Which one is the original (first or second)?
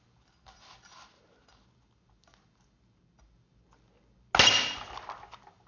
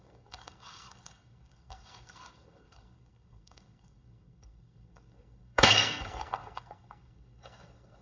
first